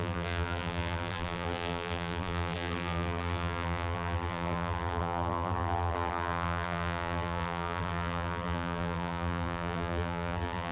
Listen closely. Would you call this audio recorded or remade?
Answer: remade